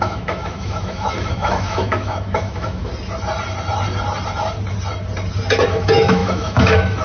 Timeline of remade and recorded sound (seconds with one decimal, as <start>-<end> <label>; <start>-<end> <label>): 0.0-2.9 remade; 2.9-5.7 recorded; 5.7-7.0 remade